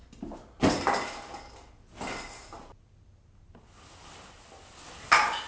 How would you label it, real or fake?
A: real